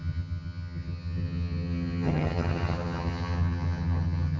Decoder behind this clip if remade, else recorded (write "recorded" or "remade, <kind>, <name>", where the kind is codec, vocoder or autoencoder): remade, vocoder, HiFi-GAN